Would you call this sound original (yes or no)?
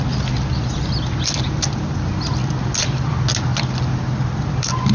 yes